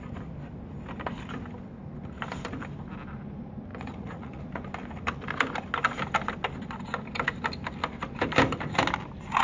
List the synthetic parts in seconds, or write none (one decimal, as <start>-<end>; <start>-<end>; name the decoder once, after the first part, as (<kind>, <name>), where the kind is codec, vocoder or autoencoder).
3.7-4.4 (vocoder, Vocos)